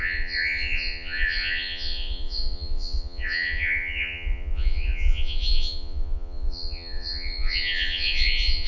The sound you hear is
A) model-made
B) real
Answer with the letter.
A